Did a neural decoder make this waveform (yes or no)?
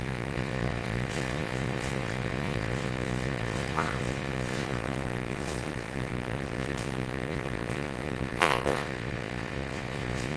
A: yes